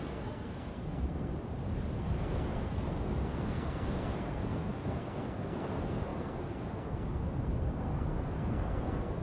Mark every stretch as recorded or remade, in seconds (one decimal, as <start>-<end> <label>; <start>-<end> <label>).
0.0-1.3 remade; 1.3-2.0 recorded; 2.0-9.2 remade

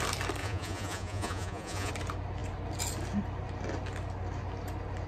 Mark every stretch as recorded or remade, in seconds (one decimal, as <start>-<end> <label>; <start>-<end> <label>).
0.0-0.4 recorded; 0.4-1.9 remade; 1.9-5.1 recorded

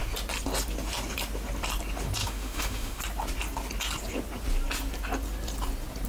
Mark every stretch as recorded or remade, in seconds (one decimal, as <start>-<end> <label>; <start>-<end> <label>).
0.0-2.2 recorded; 2.2-3.0 remade; 3.0-6.1 recorded